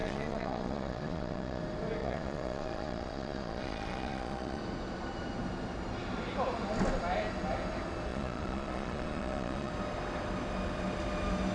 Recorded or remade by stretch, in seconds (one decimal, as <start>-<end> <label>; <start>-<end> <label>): 0.0-1.6 remade; 1.6-2.0 recorded; 2.0-4.6 remade; 4.6-8.1 recorded; 8.1-9.7 remade; 9.7-11.5 recorded